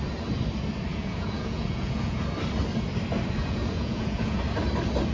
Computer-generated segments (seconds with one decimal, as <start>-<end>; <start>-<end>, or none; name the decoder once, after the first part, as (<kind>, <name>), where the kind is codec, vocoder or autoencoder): 0.9-2.2 (vocoder, Vocos); 3.4-4.4